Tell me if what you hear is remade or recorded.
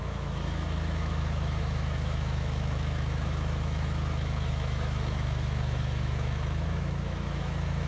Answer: remade